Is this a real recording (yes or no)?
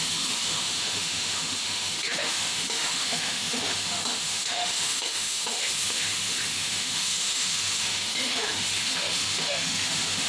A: no